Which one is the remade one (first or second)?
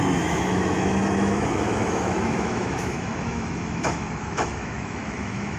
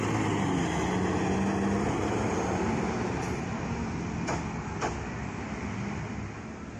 first